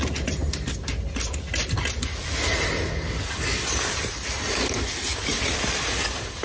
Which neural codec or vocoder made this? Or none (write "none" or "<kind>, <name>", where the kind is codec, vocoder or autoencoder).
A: none